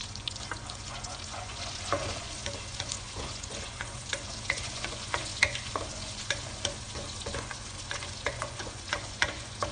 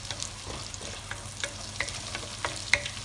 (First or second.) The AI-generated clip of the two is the first